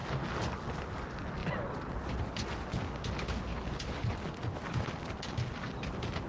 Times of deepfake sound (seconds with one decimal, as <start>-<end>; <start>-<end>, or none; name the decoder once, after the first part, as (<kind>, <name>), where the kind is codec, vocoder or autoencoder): none